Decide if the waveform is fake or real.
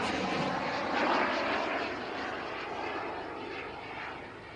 real